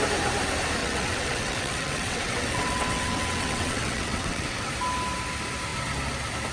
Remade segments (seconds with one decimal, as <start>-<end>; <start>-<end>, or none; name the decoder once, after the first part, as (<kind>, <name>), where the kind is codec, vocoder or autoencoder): 0.8-4.7 (vocoder, WaveNeXt)